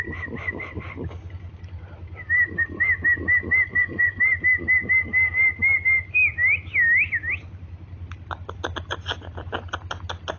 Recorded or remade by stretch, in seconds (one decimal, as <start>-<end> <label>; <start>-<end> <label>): 0.0-3.7 recorded; 3.7-4.2 remade; 4.2-10.4 recorded